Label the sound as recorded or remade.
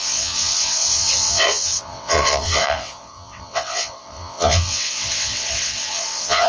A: remade